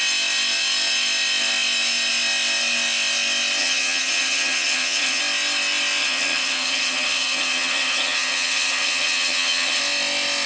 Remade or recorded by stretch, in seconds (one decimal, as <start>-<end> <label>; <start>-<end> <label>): 0.0-3.6 recorded; 3.6-5.2 remade; 5.2-6.0 recorded; 6.0-9.8 remade; 9.8-10.5 recorded